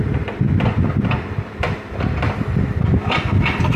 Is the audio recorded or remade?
recorded